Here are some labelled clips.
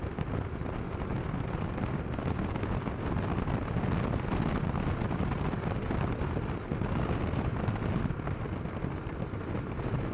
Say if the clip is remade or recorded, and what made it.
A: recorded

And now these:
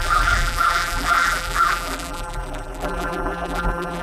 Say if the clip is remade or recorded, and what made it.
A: remade, vocoder, BigVGAN v2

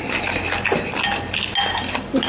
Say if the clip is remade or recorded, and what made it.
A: recorded